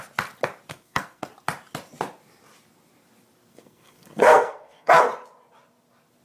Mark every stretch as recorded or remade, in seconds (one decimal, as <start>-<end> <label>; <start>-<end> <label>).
0.0-0.7 recorded; 0.7-1.3 remade; 1.3-3.5 recorded; 3.5-5.0 remade; 5.0-6.2 recorded